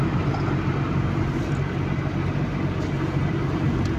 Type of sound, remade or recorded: recorded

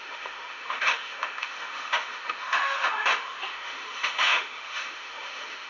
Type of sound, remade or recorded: remade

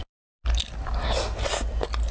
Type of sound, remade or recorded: recorded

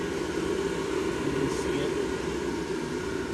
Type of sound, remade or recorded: remade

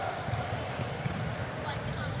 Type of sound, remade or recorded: recorded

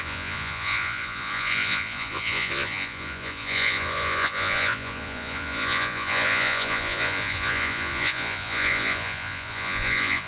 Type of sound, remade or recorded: remade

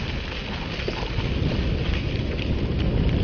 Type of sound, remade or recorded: recorded